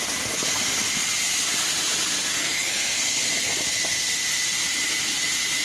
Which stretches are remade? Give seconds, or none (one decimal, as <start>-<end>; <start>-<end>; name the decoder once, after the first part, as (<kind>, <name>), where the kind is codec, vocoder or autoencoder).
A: 2.3-3.2 (codec, SNAC)